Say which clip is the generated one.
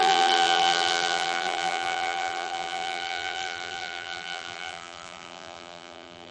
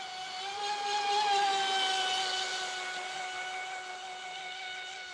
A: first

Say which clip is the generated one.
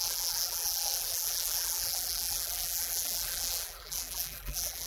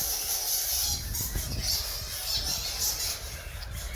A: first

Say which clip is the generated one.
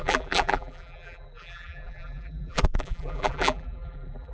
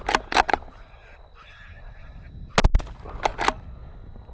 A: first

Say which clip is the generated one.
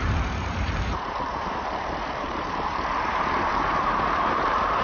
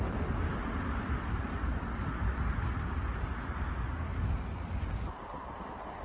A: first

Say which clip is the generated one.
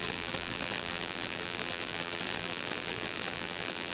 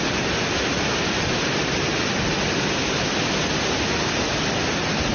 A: first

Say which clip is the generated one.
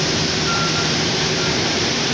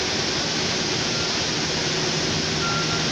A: first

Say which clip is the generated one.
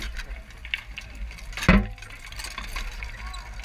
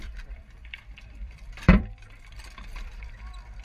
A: second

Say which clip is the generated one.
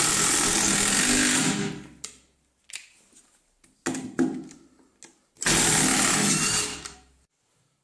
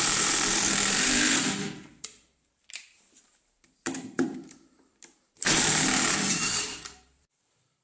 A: second